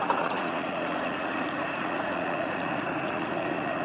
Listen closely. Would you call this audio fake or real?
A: fake